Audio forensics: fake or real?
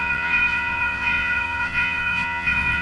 fake